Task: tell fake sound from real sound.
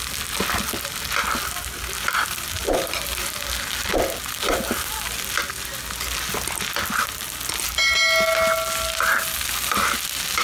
real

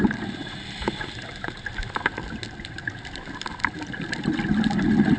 real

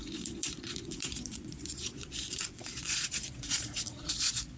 fake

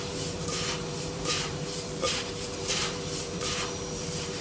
fake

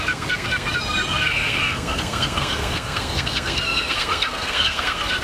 fake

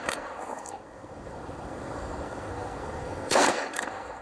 fake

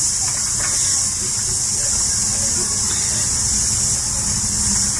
real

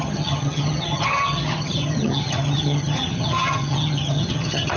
fake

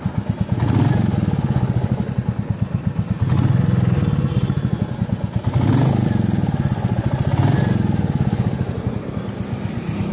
real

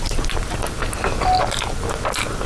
real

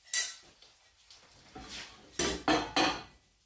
real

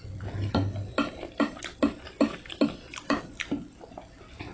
real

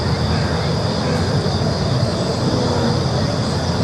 real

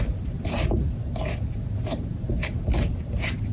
real